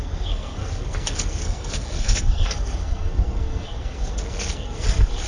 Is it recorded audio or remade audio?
remade